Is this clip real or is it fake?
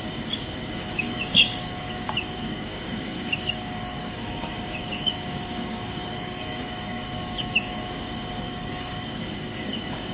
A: fake